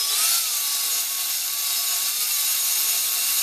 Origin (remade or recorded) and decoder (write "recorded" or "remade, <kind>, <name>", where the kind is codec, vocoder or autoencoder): recorded